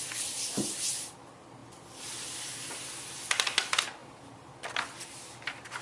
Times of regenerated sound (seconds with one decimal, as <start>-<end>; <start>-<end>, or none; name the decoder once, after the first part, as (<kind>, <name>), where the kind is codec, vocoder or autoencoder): none

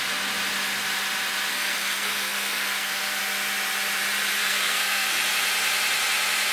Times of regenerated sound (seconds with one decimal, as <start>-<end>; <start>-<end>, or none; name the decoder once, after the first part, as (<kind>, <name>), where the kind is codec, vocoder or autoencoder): 1.5-3.2 (codec, SNAC); 4.4-5.1

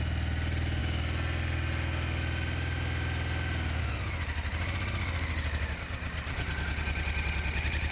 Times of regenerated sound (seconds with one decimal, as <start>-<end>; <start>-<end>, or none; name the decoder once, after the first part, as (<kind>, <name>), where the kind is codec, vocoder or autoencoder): none